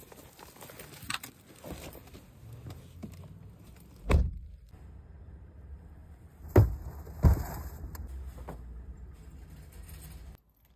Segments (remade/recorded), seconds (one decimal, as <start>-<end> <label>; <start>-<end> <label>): 0.0-10.8 recorded